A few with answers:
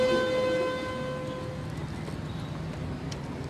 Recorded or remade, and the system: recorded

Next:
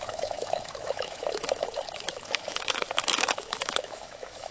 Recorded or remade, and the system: remade, autoencoder, DAC-VAE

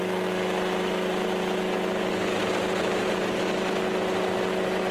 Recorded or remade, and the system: recorded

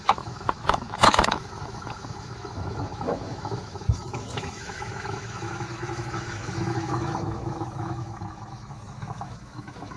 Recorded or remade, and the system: remade, autoencoder, DAC-VAE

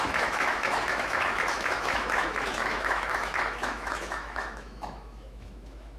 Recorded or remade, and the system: remade, autoencoder, DAC-VAE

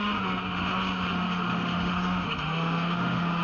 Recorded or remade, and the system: remade, autoencoder, DAC-VAE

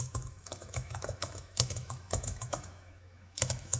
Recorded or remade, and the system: remade, autoencoder, DAC-VAE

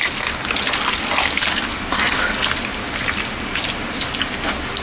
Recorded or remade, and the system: recorded